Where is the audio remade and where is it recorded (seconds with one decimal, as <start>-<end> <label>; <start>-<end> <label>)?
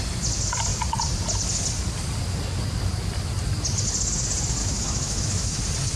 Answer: 0.0-4.6 recorded; 4.6-5.6 remade; 5.6-6.0 recorded